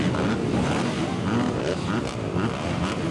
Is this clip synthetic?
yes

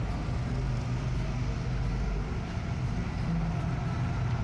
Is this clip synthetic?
no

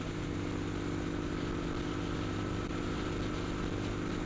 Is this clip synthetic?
no